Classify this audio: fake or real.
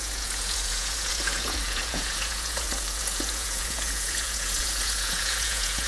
fake